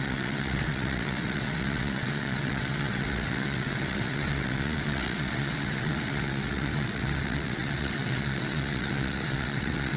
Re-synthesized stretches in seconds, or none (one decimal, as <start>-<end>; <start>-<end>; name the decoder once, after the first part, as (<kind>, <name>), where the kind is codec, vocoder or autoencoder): 0.0-10.0 (vocoder, WaveNeXt)